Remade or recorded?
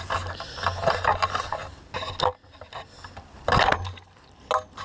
recorded